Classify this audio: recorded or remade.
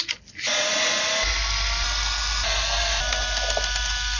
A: recorded